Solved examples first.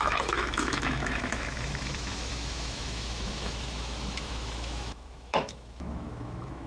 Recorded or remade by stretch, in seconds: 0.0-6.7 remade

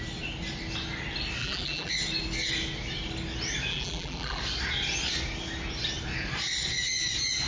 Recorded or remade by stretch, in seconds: 0.0-1.4 recorded; 1.4-1.9 remade; 1.9-3.7 recorded; 3.7-4.4 remade; 4.4-7.5 recorded

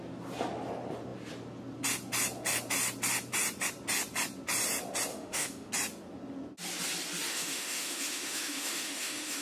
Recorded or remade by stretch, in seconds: 0.0-5.1 recorded; 5.1-5.7 remade; 5.7-7.3 recorded; 7.3-9.4 remade

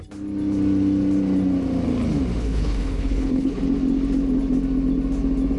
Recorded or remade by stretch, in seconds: 0.0-2.4 recorded; 2.4-3.6 remade; 3.6-5.6 recorded

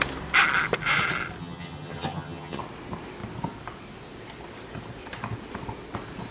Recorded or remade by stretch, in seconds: 0.0-1.4 recorded; 1.4-2.6 remade; 2.6-6.3 recorded

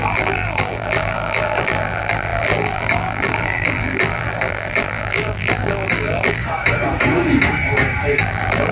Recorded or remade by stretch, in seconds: 0.0-6.4 remade; 6.4-8.2 recorded; 8.2-8.7 remade